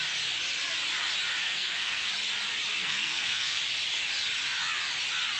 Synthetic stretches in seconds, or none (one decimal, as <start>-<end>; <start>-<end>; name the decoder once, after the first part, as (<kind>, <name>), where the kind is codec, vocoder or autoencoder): 1.4-2.1 (codec, SNAC); 2.8-3.6